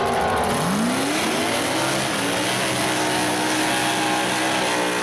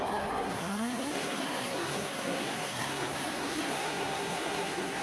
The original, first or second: first